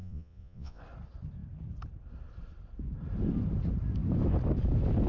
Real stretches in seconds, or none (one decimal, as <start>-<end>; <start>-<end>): 0.8-5.1